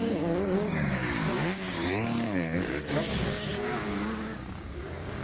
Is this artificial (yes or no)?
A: yes